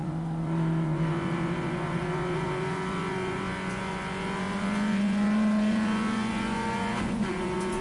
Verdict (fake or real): fake